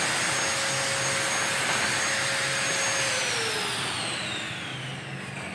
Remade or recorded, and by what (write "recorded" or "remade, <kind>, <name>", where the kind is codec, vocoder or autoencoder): recorded